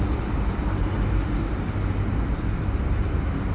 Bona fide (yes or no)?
yes